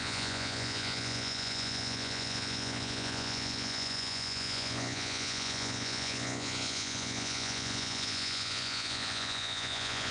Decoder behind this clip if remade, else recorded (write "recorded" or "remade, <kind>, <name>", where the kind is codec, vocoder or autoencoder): remade, vocoder, Vocos